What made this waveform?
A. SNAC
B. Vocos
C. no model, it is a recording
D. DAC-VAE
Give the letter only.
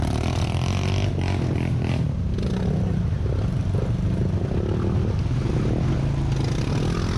C